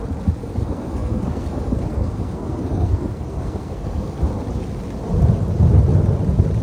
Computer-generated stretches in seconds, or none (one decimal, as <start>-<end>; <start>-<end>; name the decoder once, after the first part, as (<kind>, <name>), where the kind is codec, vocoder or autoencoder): 0.4-4.2 (codec, SNAC)